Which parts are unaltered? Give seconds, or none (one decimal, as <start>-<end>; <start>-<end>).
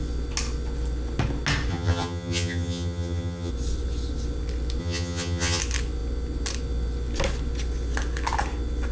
0.0-1.7; 3.5-4.8; 5.6-8.9